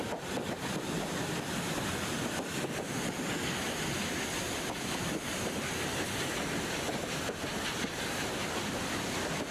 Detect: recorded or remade recorded